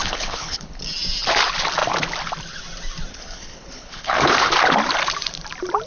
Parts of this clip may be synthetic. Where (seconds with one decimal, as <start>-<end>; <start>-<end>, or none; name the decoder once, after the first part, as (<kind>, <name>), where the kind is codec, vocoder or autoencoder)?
0.0-0.8 (codec, HILCodec); 3.1-4.5